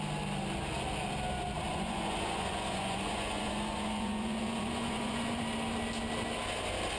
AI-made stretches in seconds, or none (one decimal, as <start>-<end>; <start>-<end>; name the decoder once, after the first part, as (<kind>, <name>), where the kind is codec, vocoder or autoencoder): 1.7-5.4 (vocoder, Vocos)